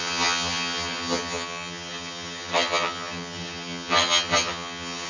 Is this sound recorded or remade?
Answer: remade